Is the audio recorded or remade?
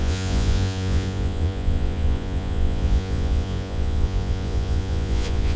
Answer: remade